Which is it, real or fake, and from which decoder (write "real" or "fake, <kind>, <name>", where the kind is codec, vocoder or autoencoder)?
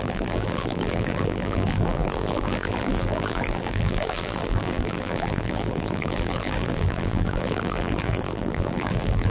fake, vocoder, BigVGAN v2